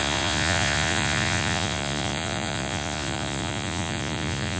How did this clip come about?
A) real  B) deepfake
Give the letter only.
B